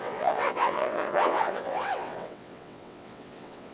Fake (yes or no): yes